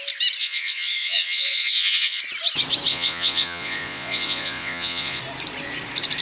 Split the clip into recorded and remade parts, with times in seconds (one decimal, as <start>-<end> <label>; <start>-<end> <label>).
0.0-0.4 recorded; 0.4-2.2 remade; 2.2-2.9 recorded; 2.9-5.2 remade; 5.2-6.2 recorded